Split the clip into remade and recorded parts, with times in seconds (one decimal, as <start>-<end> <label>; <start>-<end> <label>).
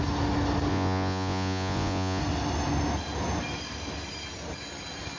0.0-0.7 recorded; 0.7-2.2 remade; 2.2-5.2 recorded